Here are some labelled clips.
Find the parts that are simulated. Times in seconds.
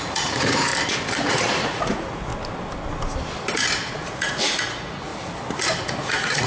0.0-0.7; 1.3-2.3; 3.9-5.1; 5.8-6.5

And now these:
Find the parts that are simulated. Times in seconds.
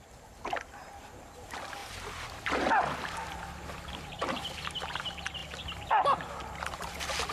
none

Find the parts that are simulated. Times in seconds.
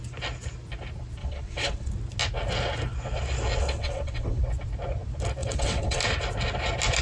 1.2-1.9; 3.6-4.4; 5.4-6.0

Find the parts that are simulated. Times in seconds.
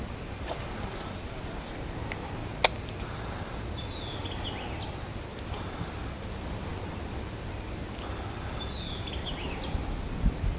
none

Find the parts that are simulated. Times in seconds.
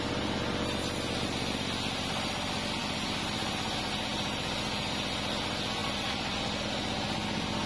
5.8-6.6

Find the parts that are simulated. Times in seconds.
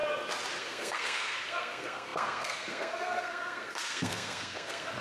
0.6-5.0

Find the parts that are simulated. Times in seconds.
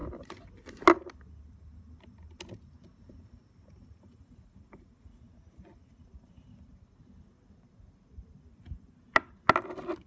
none